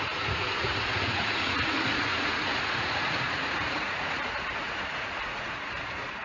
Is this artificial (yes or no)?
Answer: yes